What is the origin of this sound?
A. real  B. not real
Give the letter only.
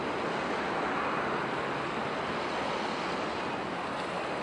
A